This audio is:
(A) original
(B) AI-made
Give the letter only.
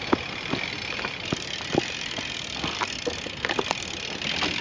A